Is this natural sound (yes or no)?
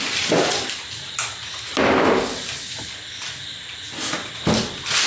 yes